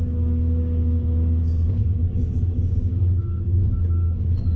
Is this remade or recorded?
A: remade